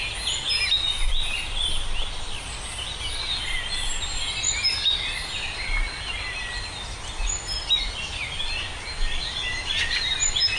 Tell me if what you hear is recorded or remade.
recorded